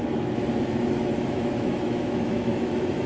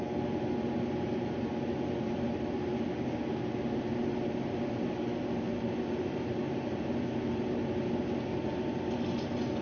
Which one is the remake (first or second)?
first